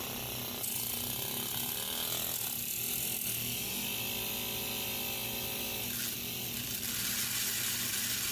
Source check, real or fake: real